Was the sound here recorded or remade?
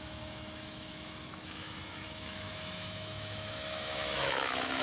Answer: remade